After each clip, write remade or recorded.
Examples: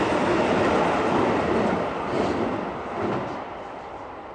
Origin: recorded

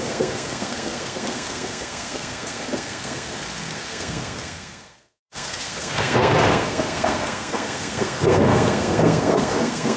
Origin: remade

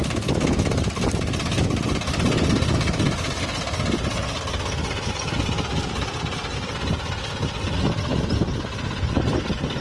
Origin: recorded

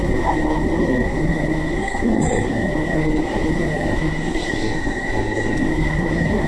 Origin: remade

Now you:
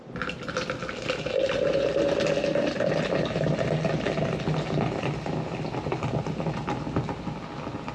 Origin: recorded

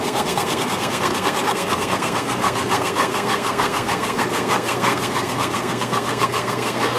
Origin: remade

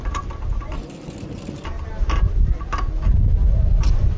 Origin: recorded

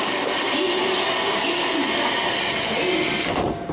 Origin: recorded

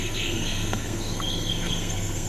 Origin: remade